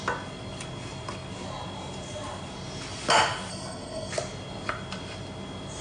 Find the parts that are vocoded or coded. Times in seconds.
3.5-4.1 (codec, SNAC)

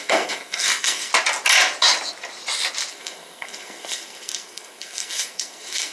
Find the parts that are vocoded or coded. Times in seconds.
0.0-1.1 (codec, SNAC); 2.9-5.9

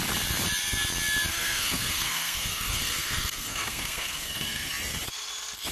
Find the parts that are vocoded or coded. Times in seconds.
1.3-4.7 (codec, SNAC)

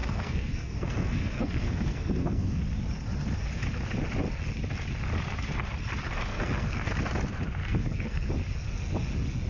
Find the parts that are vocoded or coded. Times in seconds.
0.0-2.6 (codec, SNAC); 6.3-6.9; 7.6-8.3

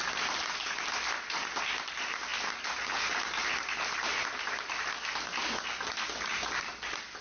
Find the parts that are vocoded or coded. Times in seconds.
none

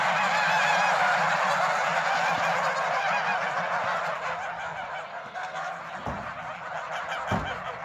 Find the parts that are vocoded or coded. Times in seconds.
5.1-5.8 (codec, SNAC)

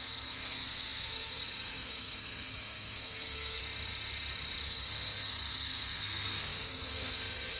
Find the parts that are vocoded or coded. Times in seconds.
0.0-3.6 (codec, SNAC); 4.7-7.6

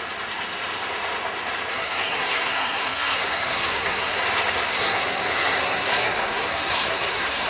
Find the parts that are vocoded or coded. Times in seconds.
1.7-4.2 (codec, SNAC); 4.7-7.5